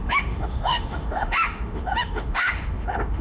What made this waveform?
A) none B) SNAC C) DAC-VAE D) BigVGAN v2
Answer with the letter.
C